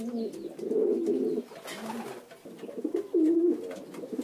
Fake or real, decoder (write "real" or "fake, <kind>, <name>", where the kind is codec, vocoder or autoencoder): real